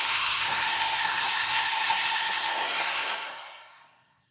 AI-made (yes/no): yes